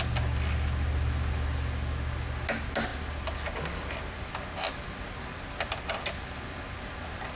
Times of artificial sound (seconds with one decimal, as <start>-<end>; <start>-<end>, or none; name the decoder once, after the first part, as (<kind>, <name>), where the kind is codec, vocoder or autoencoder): none